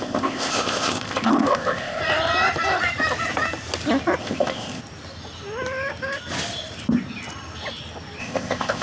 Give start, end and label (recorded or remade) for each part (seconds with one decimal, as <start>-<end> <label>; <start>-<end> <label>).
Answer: 0.0-2.0 remade; 2.0-4.2 recorded; 4.2-4.8 remade; 4.8-8.2 recorded; 8.2-8.8 remade